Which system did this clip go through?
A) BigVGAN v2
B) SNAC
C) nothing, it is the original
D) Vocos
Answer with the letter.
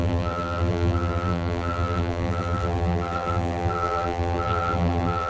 A